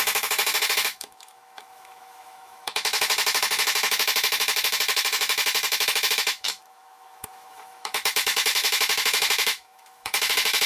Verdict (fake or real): fake